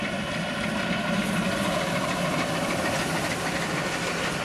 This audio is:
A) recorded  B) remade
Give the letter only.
A